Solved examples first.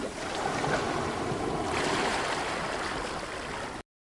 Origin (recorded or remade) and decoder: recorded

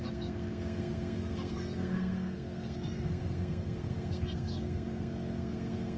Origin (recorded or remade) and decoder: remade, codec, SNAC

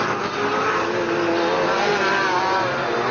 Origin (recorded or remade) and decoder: recorded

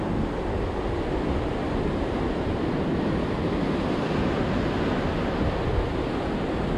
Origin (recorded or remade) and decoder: recorded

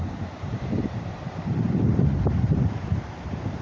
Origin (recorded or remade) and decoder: remade, vocoder, BigVGAN v2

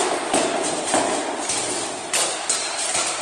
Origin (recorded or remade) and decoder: recorded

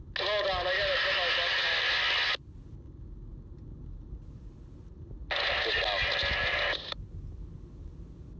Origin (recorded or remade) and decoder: recorded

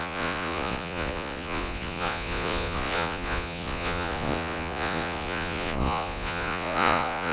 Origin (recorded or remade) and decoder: remade, vocoder, Vocos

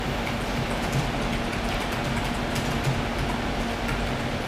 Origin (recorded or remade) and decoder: recorded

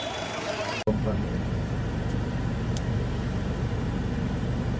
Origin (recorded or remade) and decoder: remade, vocoder, BigVGAN v2